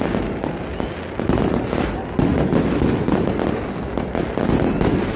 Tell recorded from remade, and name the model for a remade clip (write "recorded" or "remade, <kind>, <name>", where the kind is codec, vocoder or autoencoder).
recorded